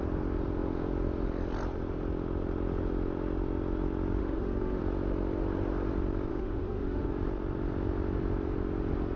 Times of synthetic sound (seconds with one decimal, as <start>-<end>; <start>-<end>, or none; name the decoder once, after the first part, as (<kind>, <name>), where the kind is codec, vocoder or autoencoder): 4.2-4.8 (autoencoder, DAC-VAE); 6.3-7.1